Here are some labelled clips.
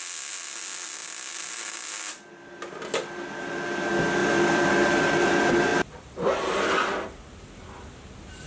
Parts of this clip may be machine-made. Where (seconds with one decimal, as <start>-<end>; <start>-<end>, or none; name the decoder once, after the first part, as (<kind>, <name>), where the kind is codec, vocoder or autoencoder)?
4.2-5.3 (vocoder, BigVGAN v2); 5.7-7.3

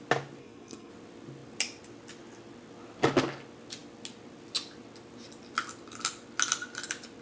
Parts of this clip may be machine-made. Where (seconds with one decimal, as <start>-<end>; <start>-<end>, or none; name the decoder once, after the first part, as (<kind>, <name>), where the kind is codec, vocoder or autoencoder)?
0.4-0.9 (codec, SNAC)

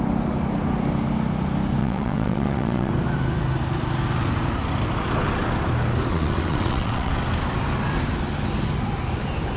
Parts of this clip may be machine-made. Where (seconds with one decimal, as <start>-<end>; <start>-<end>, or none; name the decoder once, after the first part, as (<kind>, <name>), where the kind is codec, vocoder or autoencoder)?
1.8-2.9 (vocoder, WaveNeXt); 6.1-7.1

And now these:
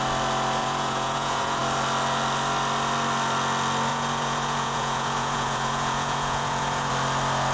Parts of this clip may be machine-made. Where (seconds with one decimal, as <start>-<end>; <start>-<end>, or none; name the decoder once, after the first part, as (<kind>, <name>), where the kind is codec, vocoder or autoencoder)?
0.6-1.6 (vocoder, Vocos); 3.9-6.9

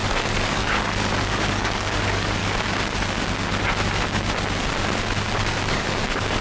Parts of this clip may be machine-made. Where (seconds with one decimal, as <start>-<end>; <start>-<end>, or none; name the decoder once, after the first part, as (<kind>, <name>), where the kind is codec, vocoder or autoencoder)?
0.0-2.4 (codec, DAC); 5.7-6.4